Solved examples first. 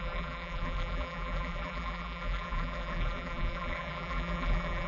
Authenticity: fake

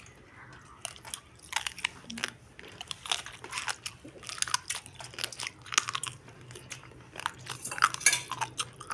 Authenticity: real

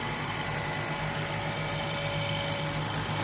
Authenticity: real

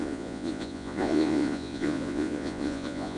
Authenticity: fake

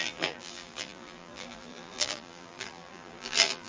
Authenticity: fake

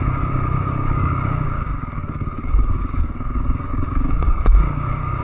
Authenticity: fake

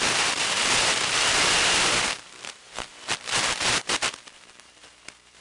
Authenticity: fake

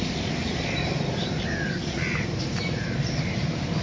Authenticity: fake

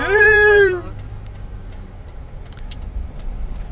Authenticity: fake